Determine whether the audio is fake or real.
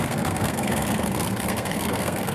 fake